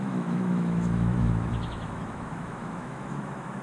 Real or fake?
fake